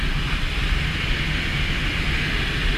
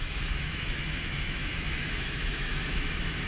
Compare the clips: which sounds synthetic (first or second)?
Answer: second